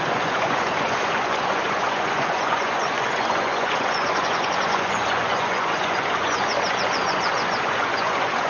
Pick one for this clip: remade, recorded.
remade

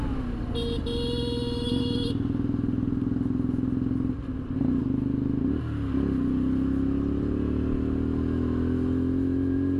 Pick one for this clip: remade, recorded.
recorded